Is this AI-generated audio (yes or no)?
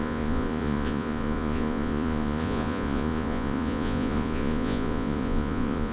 yes